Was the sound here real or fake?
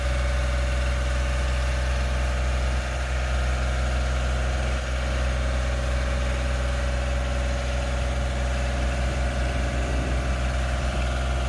real